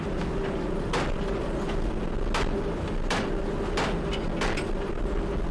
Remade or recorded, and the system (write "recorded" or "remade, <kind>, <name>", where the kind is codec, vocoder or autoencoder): recorded